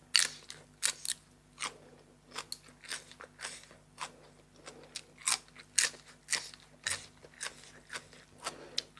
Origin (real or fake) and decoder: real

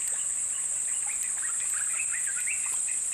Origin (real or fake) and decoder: real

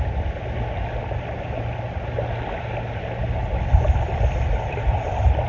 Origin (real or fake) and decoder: real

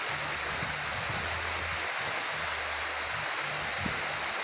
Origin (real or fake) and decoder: real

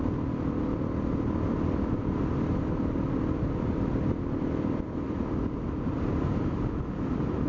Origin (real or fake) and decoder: real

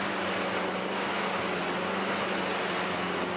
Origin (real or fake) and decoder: real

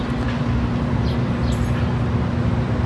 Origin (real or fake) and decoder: real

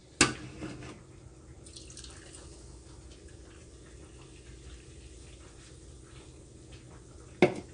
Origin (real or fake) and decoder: real